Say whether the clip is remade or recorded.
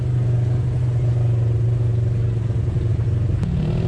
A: recorded